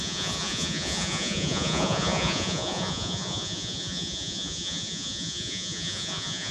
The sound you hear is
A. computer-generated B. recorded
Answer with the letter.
A